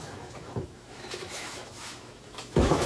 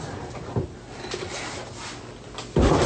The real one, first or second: second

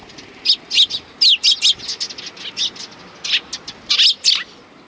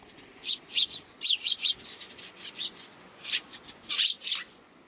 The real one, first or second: first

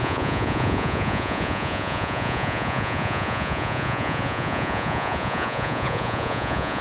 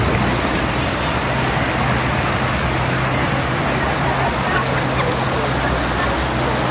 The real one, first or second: second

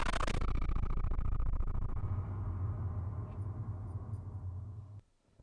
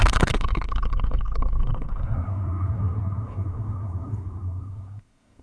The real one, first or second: first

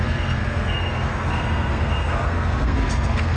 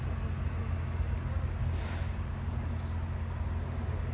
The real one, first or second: second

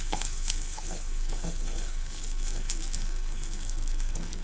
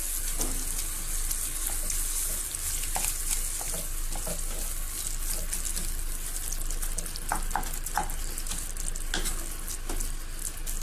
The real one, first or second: second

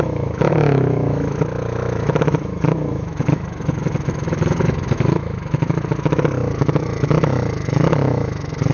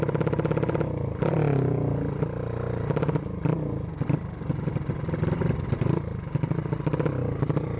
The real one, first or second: second